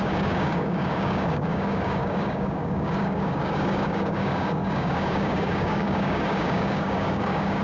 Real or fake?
fake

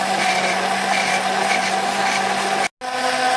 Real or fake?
real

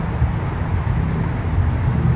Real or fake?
real